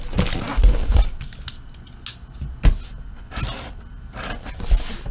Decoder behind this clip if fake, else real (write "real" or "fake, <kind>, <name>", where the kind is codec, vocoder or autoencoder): real